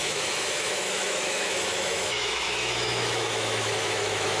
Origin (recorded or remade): remade